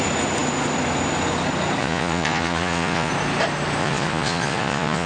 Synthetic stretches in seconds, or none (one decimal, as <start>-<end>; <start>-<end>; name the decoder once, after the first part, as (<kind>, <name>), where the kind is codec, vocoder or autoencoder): 1.8-3.1 (vocoder, Vocos); 3.8-5.1

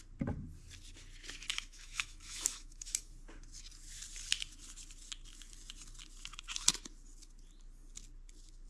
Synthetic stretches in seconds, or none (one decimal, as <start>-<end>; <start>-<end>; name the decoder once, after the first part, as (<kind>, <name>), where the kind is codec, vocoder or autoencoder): 1.5-3.1 (autoencoder, DAC-VAE)

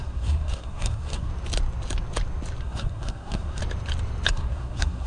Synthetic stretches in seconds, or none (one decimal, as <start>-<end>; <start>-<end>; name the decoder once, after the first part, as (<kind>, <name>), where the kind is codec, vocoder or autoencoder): 0.0-1.3 (codec, SNAC); 2.6-3.6; 4.3-5.1

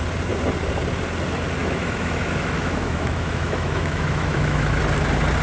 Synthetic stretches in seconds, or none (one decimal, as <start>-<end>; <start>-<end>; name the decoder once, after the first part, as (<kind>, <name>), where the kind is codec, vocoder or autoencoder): 1.6-4.8 (autoencoder, DAC-VAE)

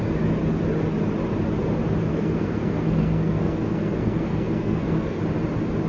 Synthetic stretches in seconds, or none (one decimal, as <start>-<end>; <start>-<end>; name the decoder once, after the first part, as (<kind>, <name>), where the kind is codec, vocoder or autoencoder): 2.1-5.2 (codec, SNAC)

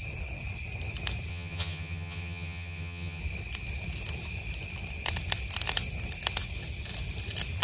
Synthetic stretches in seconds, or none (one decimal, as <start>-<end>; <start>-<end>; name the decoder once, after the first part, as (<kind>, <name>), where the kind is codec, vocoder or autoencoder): 1.3-3.2 (vocoder, HiFi-GAN)

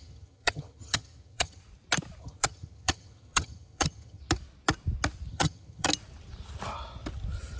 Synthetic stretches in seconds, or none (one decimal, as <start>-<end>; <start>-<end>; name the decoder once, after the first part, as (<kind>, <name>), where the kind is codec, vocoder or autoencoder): 0.0-1.6 (vocoder, HiFi-GAN); 2.2-4.2; 5.3-5.9

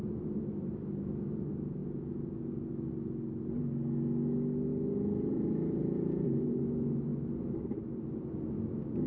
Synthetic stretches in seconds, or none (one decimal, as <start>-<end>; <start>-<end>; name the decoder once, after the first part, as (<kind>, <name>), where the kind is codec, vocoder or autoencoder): 5.8-6.6 (vocoder, BigVGAN v2)